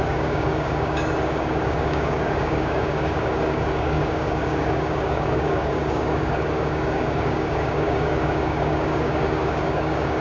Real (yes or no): no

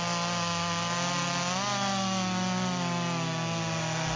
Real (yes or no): yes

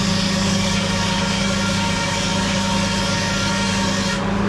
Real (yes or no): no